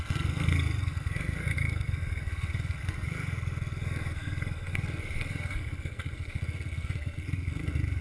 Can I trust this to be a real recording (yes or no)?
no